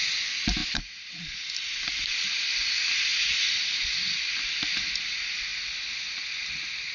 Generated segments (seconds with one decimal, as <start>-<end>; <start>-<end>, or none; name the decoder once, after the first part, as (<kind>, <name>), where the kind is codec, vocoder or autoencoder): none